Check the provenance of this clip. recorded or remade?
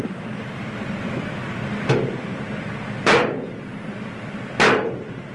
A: recorded